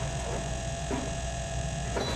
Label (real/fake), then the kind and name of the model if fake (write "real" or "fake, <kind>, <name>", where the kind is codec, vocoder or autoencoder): fake, vocoder, Vocos